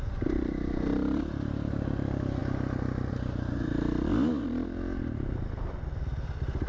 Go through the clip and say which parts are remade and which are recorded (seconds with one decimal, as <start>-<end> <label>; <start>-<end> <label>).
0.0-6.7 recorded